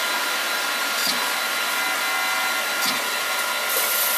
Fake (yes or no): no